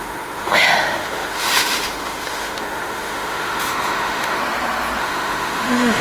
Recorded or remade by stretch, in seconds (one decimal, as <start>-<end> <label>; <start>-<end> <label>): 0.0-4.4 remade; 4.4-5.0 recorded; 5.0-6.0 remade